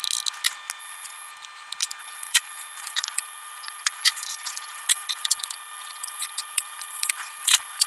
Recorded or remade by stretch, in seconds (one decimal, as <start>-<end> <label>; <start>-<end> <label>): 0.0-0.8 recorded; 0.8-1.3 remade; 1.3-2.0 recorded; 2.0-7.9 remade

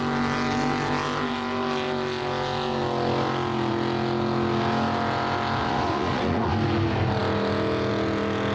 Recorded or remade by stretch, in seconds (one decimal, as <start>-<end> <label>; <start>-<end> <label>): 0.0-5.6 recorded; 5.6-6.5 remade; 6.5-8.5 recorded

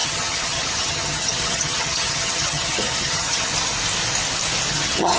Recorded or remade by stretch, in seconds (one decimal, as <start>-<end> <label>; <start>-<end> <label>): 0.0-3.5 remade; 3.5-4.7 recorded; 4.7-5.2 remade

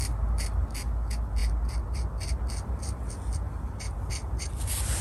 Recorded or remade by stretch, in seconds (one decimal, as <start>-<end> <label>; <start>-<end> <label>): 0.0-5.0 recorded

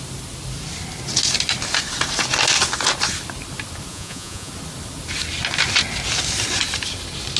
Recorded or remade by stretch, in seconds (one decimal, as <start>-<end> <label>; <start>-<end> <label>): 0.0-3.9 recorded; 3.9-4.5 remade; 4.5-7.4 recorded

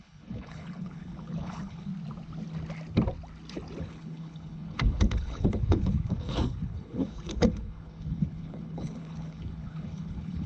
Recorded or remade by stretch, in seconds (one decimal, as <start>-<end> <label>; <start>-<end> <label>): 0.0-1.9 remade; 1.9-3.8 recorded; 3.8-10.5 remade

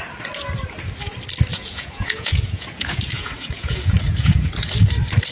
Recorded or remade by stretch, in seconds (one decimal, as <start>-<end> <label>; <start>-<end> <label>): 0.0-1.5 recorded; 1.5-4.7 remade; 4.7-5.3 recorded